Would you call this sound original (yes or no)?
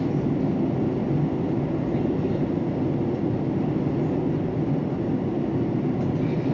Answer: yes